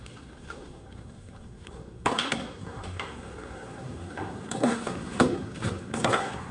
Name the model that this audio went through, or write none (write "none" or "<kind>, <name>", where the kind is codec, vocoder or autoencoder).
codec, SNAC